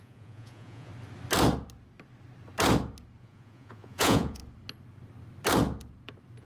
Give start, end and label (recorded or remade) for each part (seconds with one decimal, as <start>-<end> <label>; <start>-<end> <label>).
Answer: 0.0-0.9 remade; 0.9-3.2 recorded; 3.2-4.4 remade; 4.4-6.4 recorded